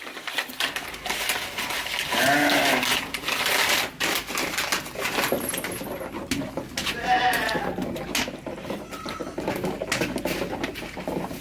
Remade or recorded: recorded